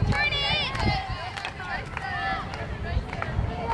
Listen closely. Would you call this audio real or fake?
real